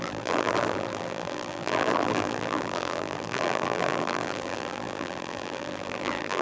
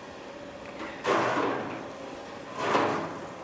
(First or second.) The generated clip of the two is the first